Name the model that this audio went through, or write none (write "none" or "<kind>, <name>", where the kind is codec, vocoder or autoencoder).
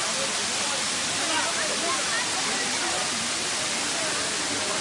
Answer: none